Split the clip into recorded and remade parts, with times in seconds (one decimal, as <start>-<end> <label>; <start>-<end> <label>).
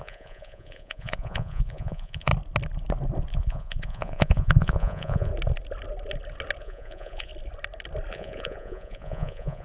0.0-2.3 remade; 2.3-3.3 recorded; 3.3-5.3 remade; 5.3-6.6 recorded; 6.6-7.3 remade; 7.3-8.1 recorded; 8.1-9.6 remade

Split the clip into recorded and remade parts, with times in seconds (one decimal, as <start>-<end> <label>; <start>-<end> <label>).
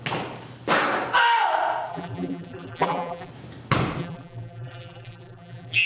0.0-1.9 recorded; 1.9-3.3 remade; 3.3-4.0 recorded; 4.0-5.9 remade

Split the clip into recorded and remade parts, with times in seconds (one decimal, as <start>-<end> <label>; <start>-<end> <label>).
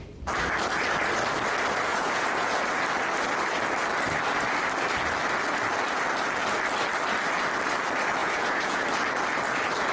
0.0-1.9 recorded; 1.9-2.6 remade; 2.6-8.2 recorded; 8.2-8.8 remade; 8.8-9.9 recorded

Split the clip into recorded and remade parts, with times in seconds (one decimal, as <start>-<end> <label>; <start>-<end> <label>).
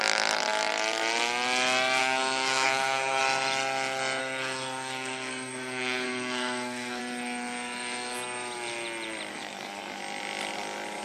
0.0-2.0 recorded; 2.0-3.2 remade; 3.2-4.2 recorded; 4.2-7.0 remade; 7.0-9.3 recorded; 9.3-10.0 remade; 10.0-11.0 recorded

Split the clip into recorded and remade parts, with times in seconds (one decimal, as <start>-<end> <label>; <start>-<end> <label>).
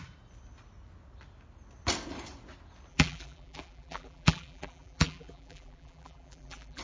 0.0-2.9 recorded; 2.9-6.8 remade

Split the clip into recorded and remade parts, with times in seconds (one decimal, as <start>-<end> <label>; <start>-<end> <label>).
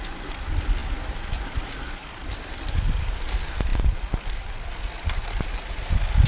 0.0-2.0 recorded; 2.0-3.1 remade; 3.1-3.7 recorded; 3.7-5.8 remade; 5.8-6.3 recorded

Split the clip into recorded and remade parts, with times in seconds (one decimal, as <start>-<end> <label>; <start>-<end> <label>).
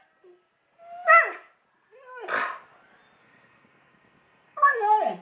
0.0-3.2 recorded; 3.2-4.7 remade; 4.7-5.2 recorded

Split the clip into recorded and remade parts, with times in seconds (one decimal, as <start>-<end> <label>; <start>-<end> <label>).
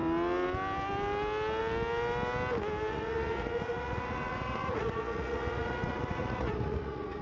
0.0-2.9 recorded; 2.9-7.2 remade